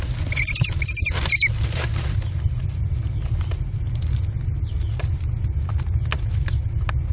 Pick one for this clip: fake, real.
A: real